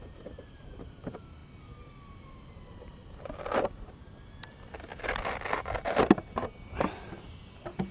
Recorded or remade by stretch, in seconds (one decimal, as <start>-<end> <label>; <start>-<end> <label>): 0.0-7.9 recorded